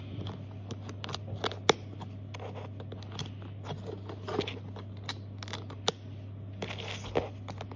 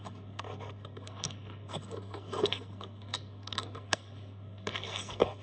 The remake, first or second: second